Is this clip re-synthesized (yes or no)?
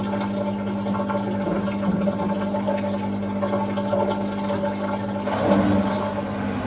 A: no